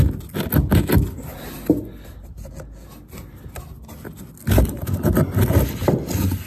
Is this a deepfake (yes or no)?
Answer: no